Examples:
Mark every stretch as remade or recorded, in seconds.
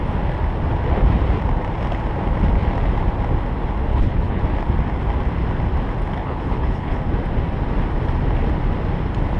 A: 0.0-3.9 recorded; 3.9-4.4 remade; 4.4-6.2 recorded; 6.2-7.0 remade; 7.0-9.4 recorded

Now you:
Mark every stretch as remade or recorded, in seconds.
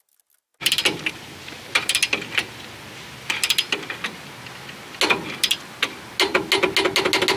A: 0.0-7.4 recorded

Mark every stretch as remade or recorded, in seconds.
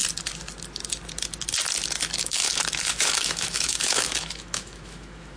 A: 0.0-2.2 recorded; 2.2-5.4 remade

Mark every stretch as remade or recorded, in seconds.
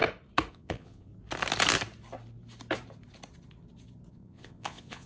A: 0.0-0.5 recorded; 0.5-1.1 remade; 1.1-4.1 recorded; 4.1-5.1 remade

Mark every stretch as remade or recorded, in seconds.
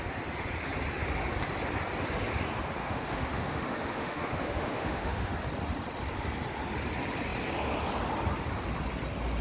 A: 0.0-2.8 recorded; 2.8-5.3 remade; 5.3-9.4 recorded